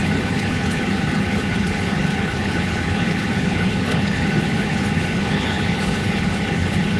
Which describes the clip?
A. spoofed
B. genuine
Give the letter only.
A